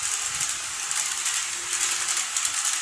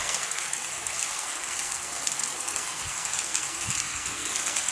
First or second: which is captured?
first